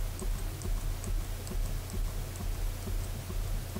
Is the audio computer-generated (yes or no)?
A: no